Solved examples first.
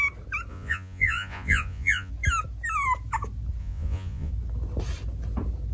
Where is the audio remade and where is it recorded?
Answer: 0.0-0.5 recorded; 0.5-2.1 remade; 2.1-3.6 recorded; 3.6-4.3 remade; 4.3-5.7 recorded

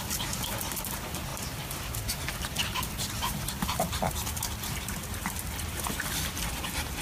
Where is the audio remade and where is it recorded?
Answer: 0.0-7.0 recorded

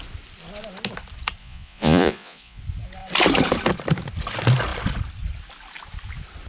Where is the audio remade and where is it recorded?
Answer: 0.0-1.4 recorded; 1.4-2.6 remade; 2.6-6.5 recorded

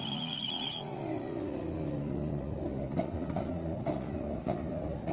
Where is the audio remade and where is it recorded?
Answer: 0.0-5.1 remade

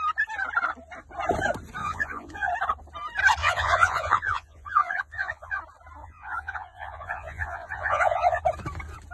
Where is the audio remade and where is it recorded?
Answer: 0.0-1.8 recorded; 1.8-2.5 remade; 2.5-3.4 recorded; 3.4-5.6 remade; 5.6-6.0 recorded; 6.0-8.4 remade; 8.4-9.1 recorded

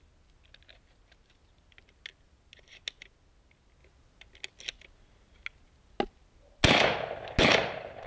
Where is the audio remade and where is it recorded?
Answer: 0.0-8.1 recorded

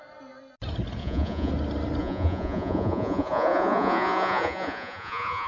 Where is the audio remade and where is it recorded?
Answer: 0.0-1.0 recorded; 1.0-1.5 remade; 1.5-2.0 recorded; 2.0-5.5 remade

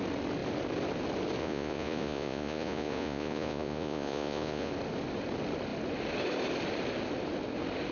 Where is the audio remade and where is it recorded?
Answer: 0.0-1.4 recorded; 1.4-4.7 remade; 4.7-7.9 recorded